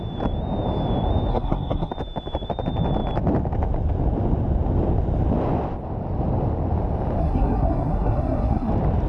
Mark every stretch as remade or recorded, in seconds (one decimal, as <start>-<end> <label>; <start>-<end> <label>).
0.0-1.3 recorded; 1.3-1.9 remade; 1.9-7.2 recorded; 7.2-8.7 remade; 8.7-9.1 recorded